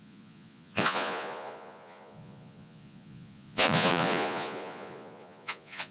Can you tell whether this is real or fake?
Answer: fake